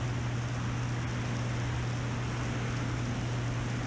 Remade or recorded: recorded